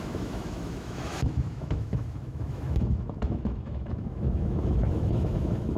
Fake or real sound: fake